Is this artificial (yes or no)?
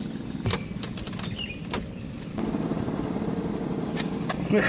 no